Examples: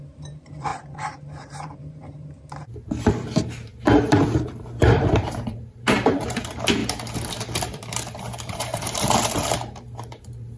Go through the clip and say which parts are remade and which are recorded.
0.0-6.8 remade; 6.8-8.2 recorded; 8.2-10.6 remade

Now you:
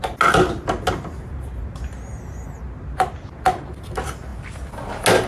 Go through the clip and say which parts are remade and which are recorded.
0.0-5.3 recorded

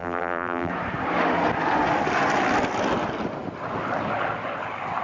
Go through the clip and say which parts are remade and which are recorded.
0.0-0.7 remade; 0.7-5.0 recorded

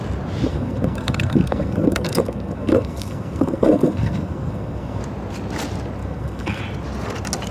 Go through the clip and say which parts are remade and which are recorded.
0.0-0.5 recorded; 0.5-5.0 remade; 5.0-6.0 recorded; 6.0-6.6 remade; 6.6-7.5 recorded

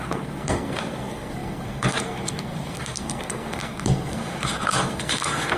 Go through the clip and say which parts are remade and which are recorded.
0.0-5.6 remade

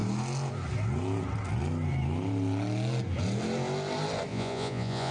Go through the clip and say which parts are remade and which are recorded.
0.0-4.3 recorded; 4.3-5.1 remade

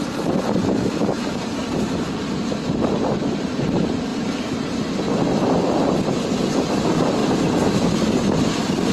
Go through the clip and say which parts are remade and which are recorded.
0.0-1.0 remade; 1.0-1.8 recorded; 1.8-4.1 remade; 4.1-5.4 recorded; 5.4-7.2 remade; 7.2-7.7 recorded; 7.7-8.9 remade